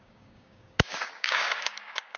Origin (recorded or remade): remade